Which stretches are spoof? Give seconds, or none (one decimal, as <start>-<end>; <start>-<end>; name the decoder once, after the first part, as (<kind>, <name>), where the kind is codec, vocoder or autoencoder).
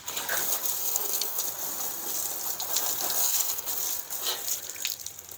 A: 0.8-1.4 (codec, SNAC); 3.2-3.7